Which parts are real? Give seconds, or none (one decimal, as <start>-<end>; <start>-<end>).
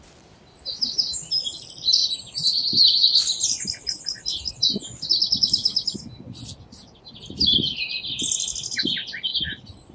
0.0-6.8; 7.5-9.9